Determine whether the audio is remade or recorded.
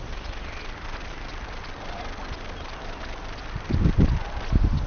recorded